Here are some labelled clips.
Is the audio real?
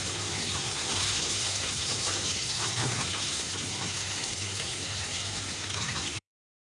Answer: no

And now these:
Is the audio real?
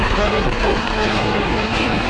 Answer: no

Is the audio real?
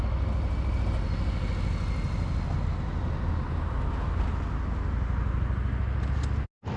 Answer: yes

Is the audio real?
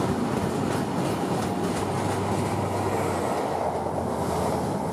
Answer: yes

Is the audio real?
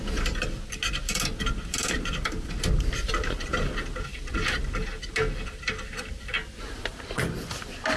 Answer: yes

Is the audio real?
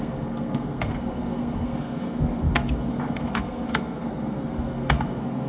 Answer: no